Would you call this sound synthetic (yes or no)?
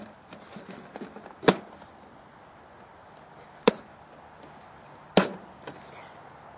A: no